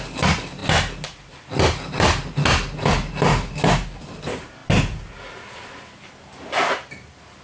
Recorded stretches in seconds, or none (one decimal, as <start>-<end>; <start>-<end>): 0.0-7.4